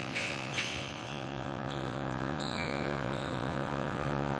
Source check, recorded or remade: remade